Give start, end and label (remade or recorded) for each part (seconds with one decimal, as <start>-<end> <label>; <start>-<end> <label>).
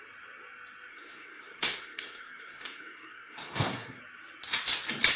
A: 0.0-0.9 recorded; 0.9-4.0 remade; 4.0-5.2 recorded